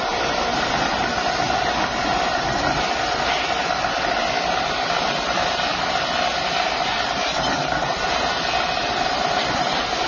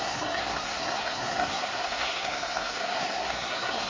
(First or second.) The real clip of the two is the first